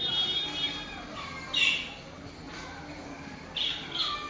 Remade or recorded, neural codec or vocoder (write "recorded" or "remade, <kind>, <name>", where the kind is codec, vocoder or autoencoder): recorded